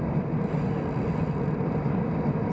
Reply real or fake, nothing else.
real